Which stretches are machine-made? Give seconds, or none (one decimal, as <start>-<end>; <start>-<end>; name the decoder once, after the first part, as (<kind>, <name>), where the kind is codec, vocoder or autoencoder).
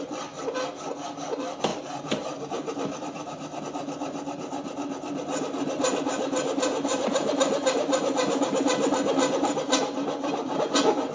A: 1.7-3.6 (vocoder, BigVGAN v2); 6.9-8.5